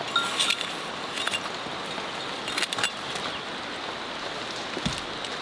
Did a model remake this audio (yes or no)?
no